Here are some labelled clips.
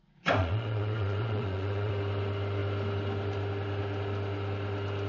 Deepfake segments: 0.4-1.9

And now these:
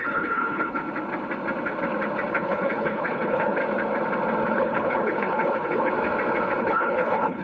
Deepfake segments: 0.0-0.8; 2.3-3.6; 4.5-5.9; 6.6-7.4

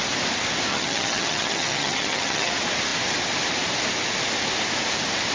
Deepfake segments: 0.7-2.5